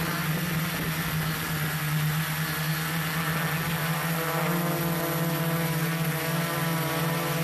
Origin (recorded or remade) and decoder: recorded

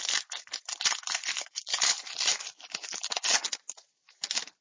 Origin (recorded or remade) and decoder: recorded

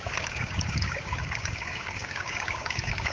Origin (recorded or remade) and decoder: remade, codec, DAC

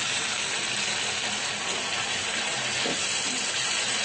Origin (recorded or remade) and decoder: recorded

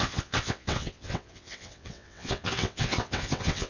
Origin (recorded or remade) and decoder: remade, vocoder, WaveNeXt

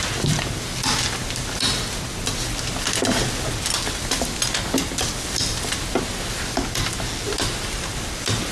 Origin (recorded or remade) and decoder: recorded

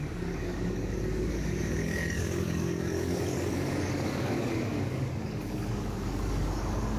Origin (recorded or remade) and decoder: remade, codec, DAC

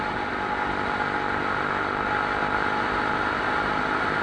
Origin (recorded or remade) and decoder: recorded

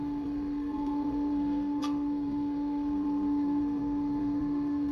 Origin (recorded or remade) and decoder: remade, codec, SNAC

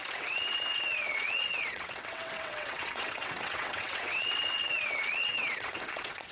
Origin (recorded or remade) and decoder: remade, vocoder, WaveNeXt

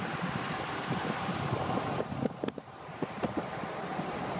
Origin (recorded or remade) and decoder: recorded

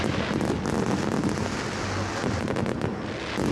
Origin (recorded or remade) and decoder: recorded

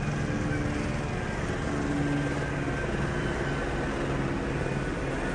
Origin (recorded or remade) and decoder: recorded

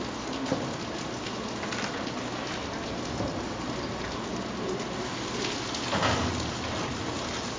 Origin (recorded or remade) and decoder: recorded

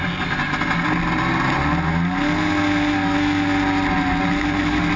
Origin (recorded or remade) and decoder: recorded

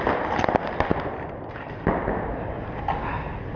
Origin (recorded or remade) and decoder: recorded